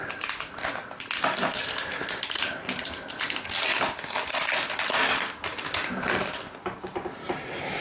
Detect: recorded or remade recorded